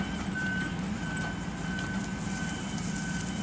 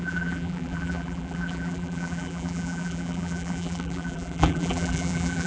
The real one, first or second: first